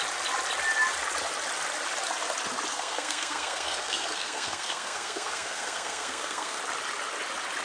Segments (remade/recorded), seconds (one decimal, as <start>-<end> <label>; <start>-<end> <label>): 0.0-2.7 recorded; 2.7-6.6 remade; 6.6-7.6 recorded